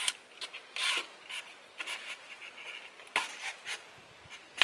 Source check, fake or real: real